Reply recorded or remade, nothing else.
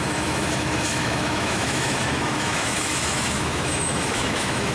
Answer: remade